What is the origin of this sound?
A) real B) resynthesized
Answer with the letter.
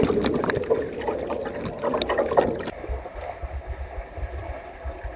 A